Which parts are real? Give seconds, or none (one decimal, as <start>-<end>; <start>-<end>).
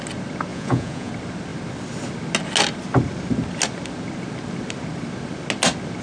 0.0-0.5; 1.1-6.0